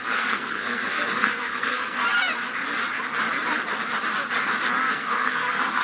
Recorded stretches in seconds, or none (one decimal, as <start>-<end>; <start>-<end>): 2.0-4.9